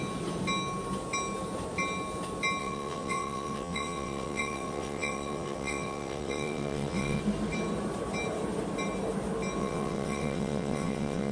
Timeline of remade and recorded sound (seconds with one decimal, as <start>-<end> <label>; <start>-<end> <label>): 0.0-2.6 recorded; 2.6-7.2 remade; 7.2-9.6 recorded; 9.6-11.3 remade